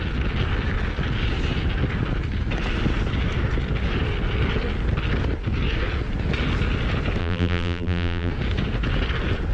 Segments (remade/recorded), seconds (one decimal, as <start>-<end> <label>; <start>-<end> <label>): 0.0-7.2 recorded; 7.2-8.3 remade; 8.3-9.5 recorded